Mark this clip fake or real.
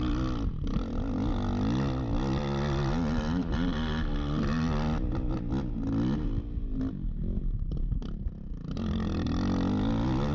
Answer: real